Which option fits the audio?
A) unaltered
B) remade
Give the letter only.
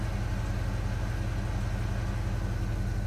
A